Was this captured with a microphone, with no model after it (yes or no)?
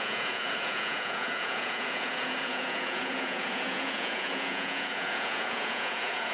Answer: no